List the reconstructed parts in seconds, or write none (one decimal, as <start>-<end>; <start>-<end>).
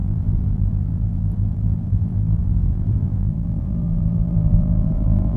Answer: 0.0-5.4